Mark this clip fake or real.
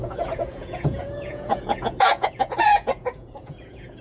fake